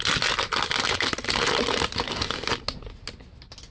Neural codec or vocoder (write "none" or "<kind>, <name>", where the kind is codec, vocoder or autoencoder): none